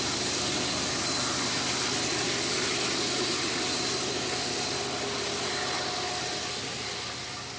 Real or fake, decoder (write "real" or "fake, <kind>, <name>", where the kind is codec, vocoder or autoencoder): real